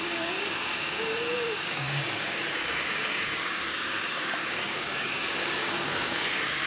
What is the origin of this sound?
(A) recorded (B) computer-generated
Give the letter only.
B